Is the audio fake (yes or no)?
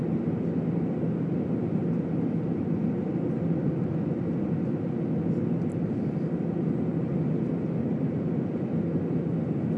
no